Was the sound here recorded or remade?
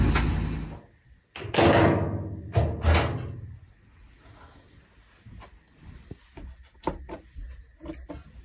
recorded